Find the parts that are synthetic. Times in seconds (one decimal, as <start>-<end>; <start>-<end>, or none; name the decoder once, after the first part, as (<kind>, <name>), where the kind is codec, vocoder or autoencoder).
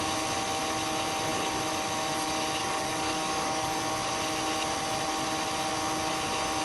2.6-3.8 (codec, DAC)